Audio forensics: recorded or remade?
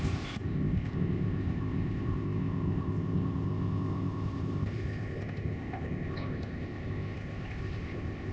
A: remade